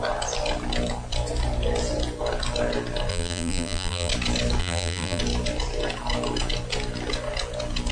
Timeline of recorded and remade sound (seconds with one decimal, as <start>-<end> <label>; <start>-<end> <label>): 0.0-3.1 recorded; 3.1-4.1 remade; 4.1-4.6 recorded; 4.6-5.2 remade; 5.2-7.9 recorded

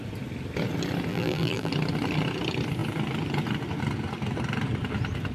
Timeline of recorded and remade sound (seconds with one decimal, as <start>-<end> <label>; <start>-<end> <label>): 0.0-1.1 recorded; 1.1-1.7 remade; 1.7-5.3 recorded

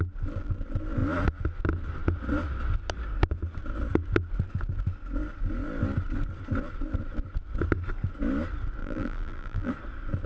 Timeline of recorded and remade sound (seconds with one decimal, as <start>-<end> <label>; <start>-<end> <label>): 0.0-8.8 recorded; 8.8-9.7 remade; 9.7-10.3 recorded